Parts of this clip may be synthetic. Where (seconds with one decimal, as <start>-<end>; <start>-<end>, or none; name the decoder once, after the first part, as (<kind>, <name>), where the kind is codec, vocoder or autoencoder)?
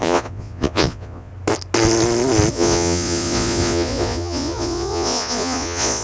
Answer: 0.0-1.3 (vocoder, Vocos); 2.5-6.0